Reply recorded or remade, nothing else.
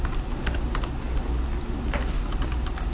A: recorded